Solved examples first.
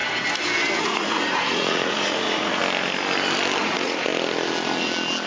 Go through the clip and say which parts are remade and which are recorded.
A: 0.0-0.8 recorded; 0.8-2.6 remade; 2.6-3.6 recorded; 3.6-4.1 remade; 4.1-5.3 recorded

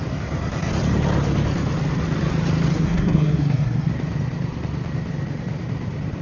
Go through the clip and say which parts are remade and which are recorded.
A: 0.0-2.7 recorded; 2.7-3.9 remade; 3.9-6.2 recorded

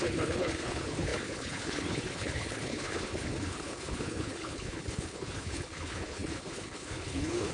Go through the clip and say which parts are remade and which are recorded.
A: 0.0-7.5 remade

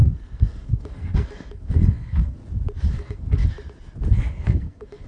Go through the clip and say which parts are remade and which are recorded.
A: 0.0-2.4 remade; 2.4-2.9 recorded; 2.9-3.4 remade; 3.4-4.2 recorded; 4.2-5.1 remade

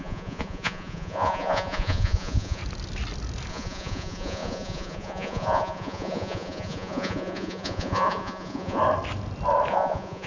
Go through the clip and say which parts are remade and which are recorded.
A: 0.0-2.6 remade; 2.6-3.5 recorded; 3.5-8.8 remade; 8.8-9.7 recorded; 9.7-10.3 remade

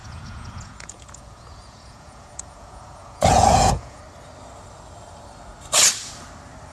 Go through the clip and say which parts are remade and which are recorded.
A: 0.0-4.0 remade; 4.0-6.7 recorded

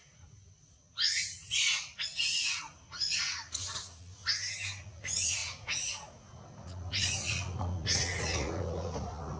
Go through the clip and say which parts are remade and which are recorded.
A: 0.0-4.2 remade; 4.2-4.8 recorded; 4.8-9.4 remade